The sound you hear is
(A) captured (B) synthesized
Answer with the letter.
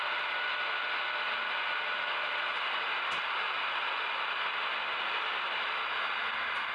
A